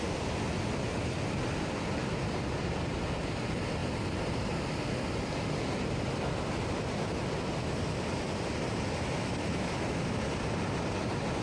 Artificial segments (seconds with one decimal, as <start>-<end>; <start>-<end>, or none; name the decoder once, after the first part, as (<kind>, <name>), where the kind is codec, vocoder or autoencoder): none